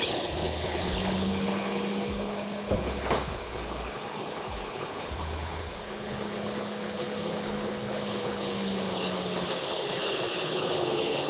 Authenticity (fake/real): fake